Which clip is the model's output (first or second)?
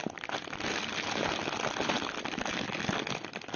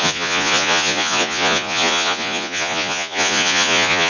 second